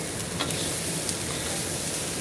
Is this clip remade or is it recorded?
recorded